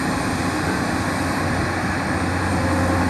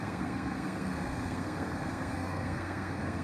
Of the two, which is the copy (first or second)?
second